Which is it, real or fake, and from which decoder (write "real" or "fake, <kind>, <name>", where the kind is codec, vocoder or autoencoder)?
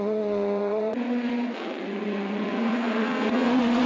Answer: fake, vocoder, WaveNeXt